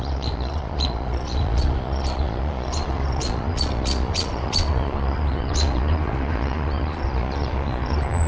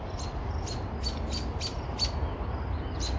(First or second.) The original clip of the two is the second